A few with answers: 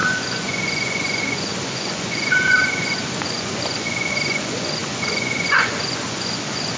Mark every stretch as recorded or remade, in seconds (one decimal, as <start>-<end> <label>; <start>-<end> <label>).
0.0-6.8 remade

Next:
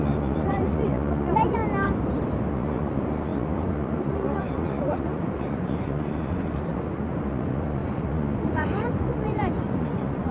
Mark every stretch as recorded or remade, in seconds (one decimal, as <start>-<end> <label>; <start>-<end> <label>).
0.0-1.6 remade; 1.6-2.5 recorded; 2.5-10.3 remade

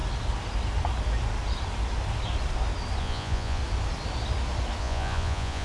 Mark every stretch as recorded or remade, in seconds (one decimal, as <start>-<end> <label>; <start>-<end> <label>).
0.0-3.0 recorded; 3.0-3.6 remade; 3.6-4.8 recorded; 4.8-5.6 remade

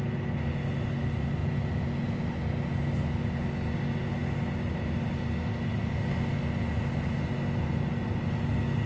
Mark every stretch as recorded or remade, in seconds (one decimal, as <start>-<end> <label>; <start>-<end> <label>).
0.0-8.9 recorded

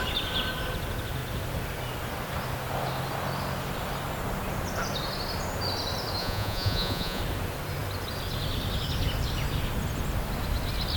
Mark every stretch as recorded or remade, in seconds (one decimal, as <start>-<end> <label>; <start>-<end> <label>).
0.0-6.2 recorded; 6.2-7.2 remade; 7.2-11.0 recorded

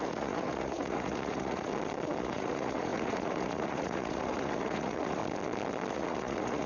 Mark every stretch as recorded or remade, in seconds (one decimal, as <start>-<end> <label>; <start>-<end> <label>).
0.0-1.7 remade; 1.7-2.2 recorded; 2.2-5.2 remade; 5.2-5.9 recorded; 5.9-6.7 remade

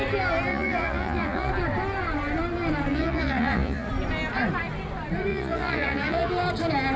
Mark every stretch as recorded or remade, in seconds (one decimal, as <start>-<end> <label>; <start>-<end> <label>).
0.0-0.5 recorded; 0.5-1.5 remade; 1.5-2.9 recorded; 2.9-3.9 remade; 3.9-5.3 recorded; 5.3-6.3 remade; 6.3-7.0 recorded